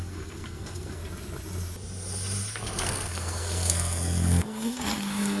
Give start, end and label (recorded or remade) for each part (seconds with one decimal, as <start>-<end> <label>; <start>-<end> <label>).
0.0-1.0 remade; 1.0-2.5 recorded; 2.5-5.4 remade